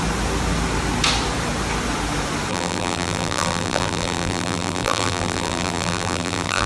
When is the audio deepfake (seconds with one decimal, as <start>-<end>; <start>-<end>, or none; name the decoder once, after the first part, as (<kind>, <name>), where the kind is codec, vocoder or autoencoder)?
2.5-6.7 (vocoder, BigVGAN v2)